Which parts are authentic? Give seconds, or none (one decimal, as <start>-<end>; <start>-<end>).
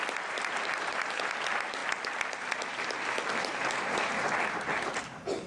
1.8-5.0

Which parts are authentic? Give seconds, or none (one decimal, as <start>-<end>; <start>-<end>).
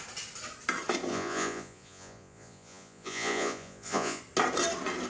0.0-1.1; 4.2-5.1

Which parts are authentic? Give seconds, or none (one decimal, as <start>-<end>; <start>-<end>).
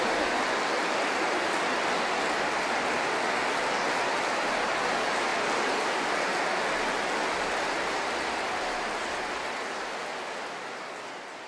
0.0-11.5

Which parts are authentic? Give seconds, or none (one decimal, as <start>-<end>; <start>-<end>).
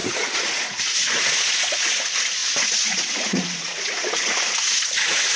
none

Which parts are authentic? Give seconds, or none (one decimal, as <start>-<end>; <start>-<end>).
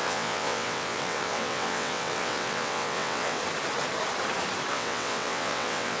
3.4-4.7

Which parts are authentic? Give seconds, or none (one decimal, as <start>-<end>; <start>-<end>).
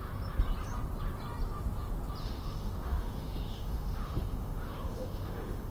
0.0-2.2